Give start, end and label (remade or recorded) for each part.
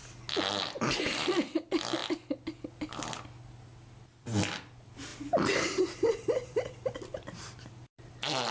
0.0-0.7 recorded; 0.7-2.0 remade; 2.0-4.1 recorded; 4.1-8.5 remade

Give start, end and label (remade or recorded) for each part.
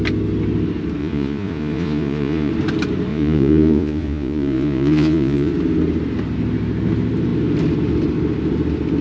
0.0-1.0 recorded; 1.0-2.5 remade; 2.5-3.1 recorded; 3.1-5.5 remade; 5.5-9.0 recorded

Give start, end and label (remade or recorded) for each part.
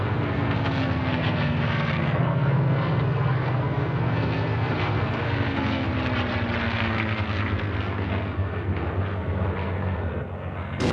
0.0-5.9 remade; 5.9-6.6 recorded; 6.6-10.9 remade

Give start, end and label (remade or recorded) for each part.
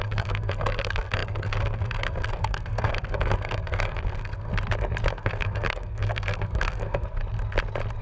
0.0-4.5 remade; 4.5-5.1 recorded; 5.1-7.2 remade; 7.2-8.0 recorded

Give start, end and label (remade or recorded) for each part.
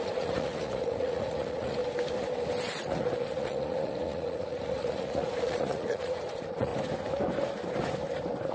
0.0-1.8 remade; 1.8-2.8 recorded; 2.8-6.7 remade; 6.7-8.5 recorded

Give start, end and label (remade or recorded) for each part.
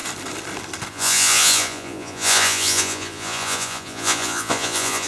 0.0-0.9 recorded; 0.9-5.1 remade